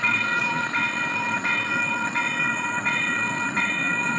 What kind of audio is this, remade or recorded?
remade